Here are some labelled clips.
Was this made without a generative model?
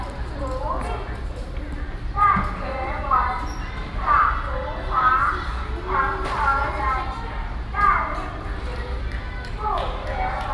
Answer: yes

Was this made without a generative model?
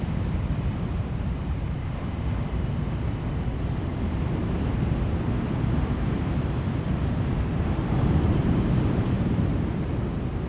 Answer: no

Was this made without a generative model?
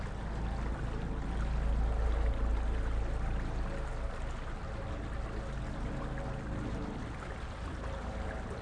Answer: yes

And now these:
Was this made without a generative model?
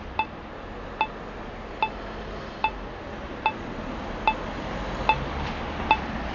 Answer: yes